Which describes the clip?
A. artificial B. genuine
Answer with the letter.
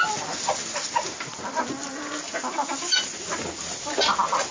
B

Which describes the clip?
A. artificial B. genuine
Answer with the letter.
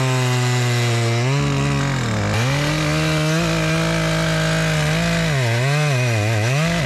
B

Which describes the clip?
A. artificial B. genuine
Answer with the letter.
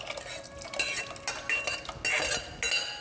B